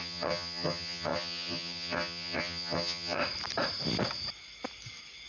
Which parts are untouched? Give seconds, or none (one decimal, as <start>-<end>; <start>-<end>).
3.2-5.3